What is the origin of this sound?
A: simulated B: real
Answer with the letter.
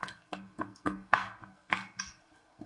A